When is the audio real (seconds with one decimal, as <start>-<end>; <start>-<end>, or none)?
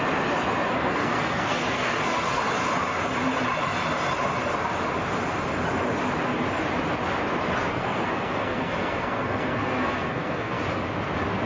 0.0-0.7; 2.4-7.7; 10.6-11.5